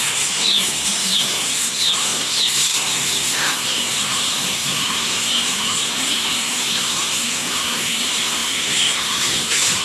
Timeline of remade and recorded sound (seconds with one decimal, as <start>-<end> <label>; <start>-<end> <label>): 0.0-9.8 remade